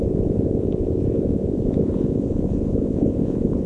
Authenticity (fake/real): fake